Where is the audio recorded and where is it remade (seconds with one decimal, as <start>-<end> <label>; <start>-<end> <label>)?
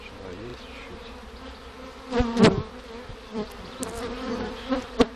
0.0-5.2 remade